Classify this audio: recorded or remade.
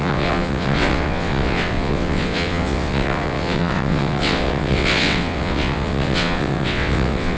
remade